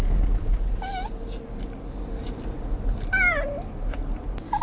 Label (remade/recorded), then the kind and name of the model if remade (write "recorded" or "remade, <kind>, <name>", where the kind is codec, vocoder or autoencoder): recorded